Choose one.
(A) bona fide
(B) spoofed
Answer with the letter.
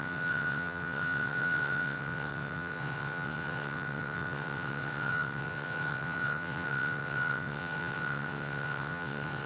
B